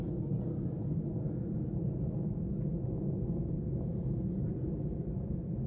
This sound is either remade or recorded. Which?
recorded